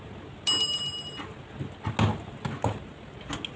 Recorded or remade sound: recorded